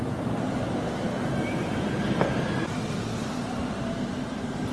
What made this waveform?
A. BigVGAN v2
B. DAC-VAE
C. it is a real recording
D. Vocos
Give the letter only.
C